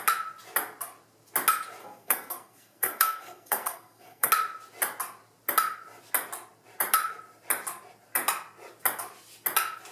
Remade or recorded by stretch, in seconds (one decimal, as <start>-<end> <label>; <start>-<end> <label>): 0.0-1.8 recorded; 1.8-4.3 remade; 4.3-9.9 recorded